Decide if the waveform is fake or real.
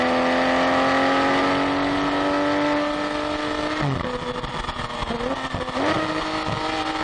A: real